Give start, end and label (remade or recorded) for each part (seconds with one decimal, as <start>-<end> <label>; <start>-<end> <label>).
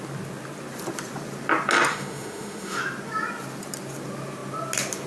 0.0-1.9 recorded; 1.9-2.8 remade; 2.8-5.1 recorded